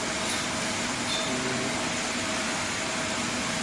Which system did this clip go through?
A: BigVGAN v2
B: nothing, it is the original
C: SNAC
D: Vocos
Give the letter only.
B